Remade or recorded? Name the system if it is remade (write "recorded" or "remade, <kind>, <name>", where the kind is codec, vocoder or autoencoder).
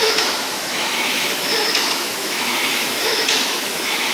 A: remade, autoencoder, DAC-VAE